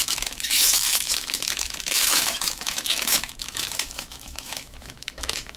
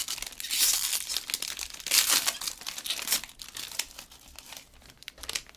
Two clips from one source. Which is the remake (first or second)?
first